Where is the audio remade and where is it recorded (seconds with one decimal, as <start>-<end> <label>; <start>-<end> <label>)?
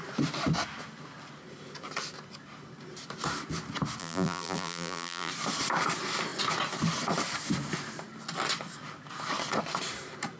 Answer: 0.0-4.0 recorded; 4.0-5.3 remade; 5.3-10.4 recorded